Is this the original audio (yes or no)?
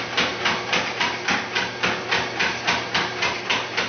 yes